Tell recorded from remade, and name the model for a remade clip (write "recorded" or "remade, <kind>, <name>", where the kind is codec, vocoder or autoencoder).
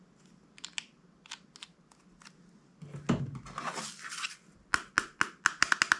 recorded